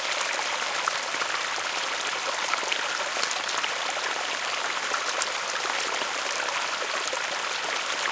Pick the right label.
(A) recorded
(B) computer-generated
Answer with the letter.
A